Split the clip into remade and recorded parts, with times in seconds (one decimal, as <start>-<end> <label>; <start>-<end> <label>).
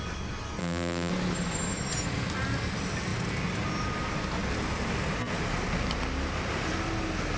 0.0-0.6 recorded; 0.6-1.1 remade; 1.1-7.4 recorded